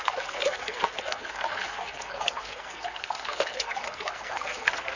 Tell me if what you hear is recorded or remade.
remade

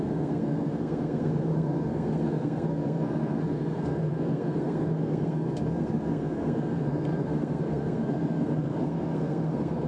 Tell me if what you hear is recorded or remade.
remade